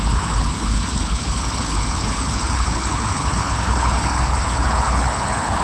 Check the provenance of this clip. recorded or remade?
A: remade